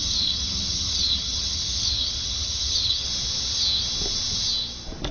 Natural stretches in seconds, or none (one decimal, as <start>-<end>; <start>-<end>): 3.1-5.1